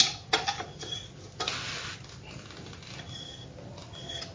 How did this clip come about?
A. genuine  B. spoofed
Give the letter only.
A